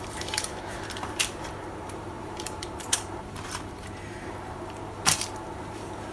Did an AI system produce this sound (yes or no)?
yes